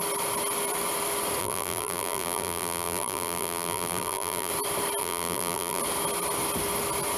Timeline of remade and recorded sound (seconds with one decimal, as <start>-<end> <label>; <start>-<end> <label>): 0.0-1.4 recorded; 1.4-4.5 remade; 4.5-5.0 recorded; 5.0-5.8 remade; 5.8-7.2 recorded